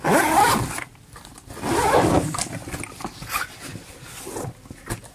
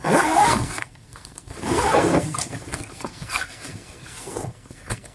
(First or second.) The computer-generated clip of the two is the second